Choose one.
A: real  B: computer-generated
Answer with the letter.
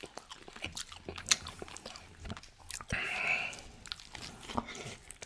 A